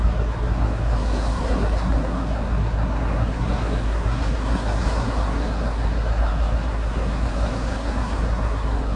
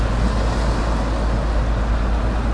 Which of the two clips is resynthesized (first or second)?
first